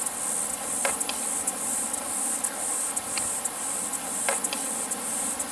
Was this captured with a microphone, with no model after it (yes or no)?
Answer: yes